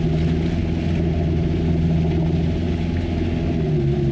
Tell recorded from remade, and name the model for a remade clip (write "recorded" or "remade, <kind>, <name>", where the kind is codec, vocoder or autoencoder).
recorded